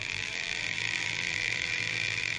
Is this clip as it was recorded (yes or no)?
no